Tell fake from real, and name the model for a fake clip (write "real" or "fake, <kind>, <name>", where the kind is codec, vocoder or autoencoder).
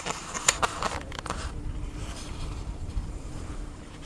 fake, vocoder, BigVGAN v2